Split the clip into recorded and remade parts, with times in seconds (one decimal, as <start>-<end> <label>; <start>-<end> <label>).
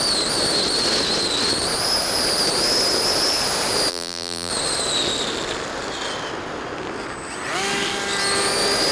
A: 0.0-3.9 recorded; 3.9-4.5 remade; 4.5-8.9 recorded